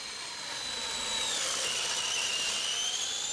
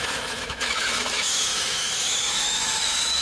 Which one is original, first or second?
first